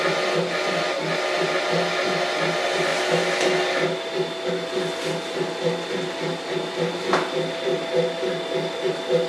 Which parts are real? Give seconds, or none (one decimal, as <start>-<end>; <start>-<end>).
0.0-9.3